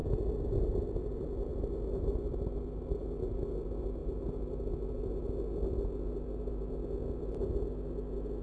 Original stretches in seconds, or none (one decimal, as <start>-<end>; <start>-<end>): 0.0-8.4